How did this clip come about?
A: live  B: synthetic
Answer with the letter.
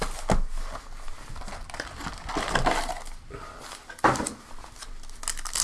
A